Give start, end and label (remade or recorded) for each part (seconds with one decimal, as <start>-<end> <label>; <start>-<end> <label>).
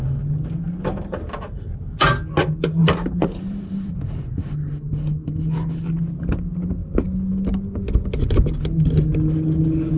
0.0-2.8 recorded; 2.8-3.9 remade; 3.9-10.0 recorded